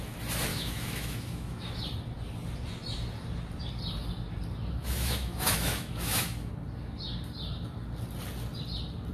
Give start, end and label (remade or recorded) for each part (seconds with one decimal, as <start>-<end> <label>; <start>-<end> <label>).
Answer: 0.0-0.5 recorded; 0.5-1.7 remade; 1.7-4.8 recorded; 4.8-6.5 remade; 6.5-9.1 recorded